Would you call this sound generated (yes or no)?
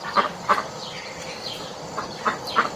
yes